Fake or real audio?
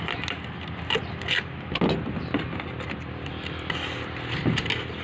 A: real